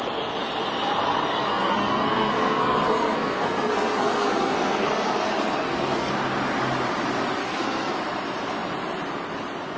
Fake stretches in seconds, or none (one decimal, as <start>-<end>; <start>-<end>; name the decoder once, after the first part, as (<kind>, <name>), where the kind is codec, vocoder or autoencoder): 1.3-6.1 (codec, SNAC); 7.4-8.0